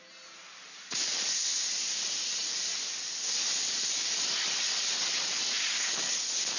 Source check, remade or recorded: recorded